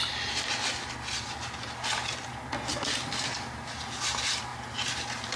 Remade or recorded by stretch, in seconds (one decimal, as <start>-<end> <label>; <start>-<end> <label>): 0.0-5.4 recorded

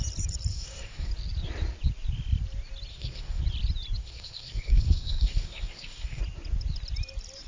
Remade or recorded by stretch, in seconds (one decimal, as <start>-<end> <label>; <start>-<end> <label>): 0.0-0.5 recorded; 0.5-1.1 remade; 1.1-2.9 recorded; 2.9-3.4 remade; 3.4-4.0 recorded; 4.0-6.2 remade; 6.2-7.5 recorded

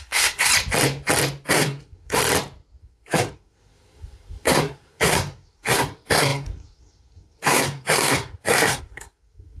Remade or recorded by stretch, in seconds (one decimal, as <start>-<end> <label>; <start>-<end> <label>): 0.0-0.5 remade; 0.5-1.5 recorded; 1.5-2.2 remade; 2.2-2.8 recorded; 2.8-9.6 remade